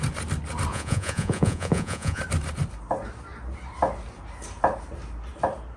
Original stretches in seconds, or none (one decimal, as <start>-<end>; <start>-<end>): 0.0-0.7; 2.2-5.8